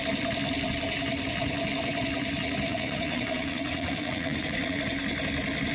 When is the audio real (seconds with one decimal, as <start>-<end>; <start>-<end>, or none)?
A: 0.0-2.7; 4.8-5.7